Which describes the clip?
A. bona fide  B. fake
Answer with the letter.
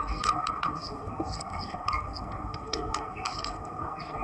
B